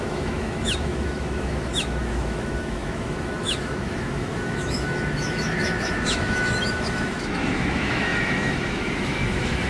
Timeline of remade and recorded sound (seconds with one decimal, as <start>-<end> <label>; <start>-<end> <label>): 0.0-9.7 remade